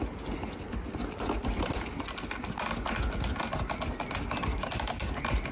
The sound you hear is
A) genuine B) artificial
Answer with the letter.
A